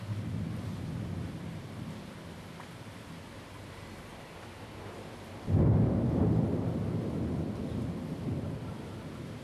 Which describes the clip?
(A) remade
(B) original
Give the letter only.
B